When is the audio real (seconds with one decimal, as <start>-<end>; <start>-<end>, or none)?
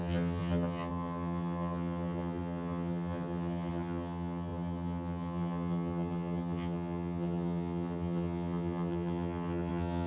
none